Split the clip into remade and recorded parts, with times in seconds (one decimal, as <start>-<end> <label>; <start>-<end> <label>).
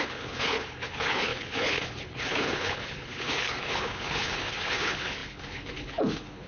0.0-6.5 remade